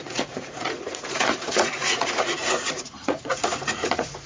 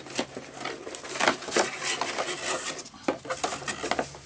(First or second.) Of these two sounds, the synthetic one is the first